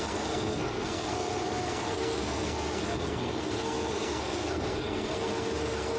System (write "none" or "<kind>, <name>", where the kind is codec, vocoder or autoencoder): codec, SNAC